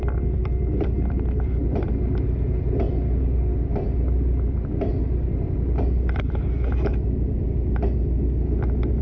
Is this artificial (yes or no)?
no